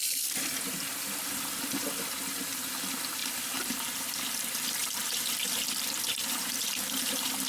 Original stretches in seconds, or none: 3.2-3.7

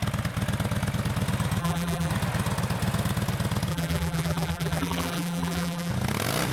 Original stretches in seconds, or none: 0.0-1.6; 2.1-3.7; 5.9-6.5

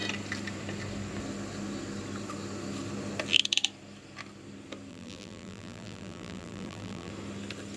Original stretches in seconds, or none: 0.0-4.9; 7.1-7.8